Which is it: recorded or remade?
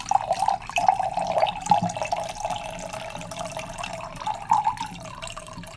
recorded